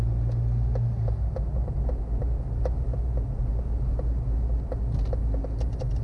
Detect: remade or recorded recorded